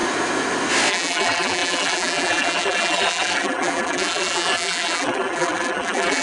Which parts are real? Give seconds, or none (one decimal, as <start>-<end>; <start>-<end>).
0.0-0.9